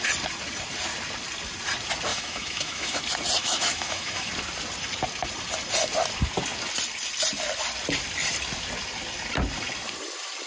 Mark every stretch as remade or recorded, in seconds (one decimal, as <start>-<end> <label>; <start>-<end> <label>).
0.0-2.1 recorded; 2.1-3.0 remade; 3.0-3.4 recorded; 3.4-4.3 remade; 4.3-10.5 recorded